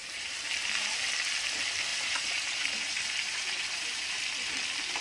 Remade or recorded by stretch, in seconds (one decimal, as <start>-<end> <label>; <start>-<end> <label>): 0.0-0.5 remade; 0.5-1.9 recorded; 1.9-4.2 remade; 4.2-5.0 recorded